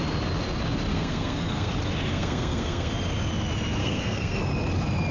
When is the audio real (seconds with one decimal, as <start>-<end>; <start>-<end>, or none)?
0.0-0.9; 1.7-2.1; 2.9-3.8; 4.4-5.1